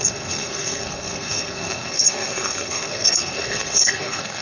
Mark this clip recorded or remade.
remade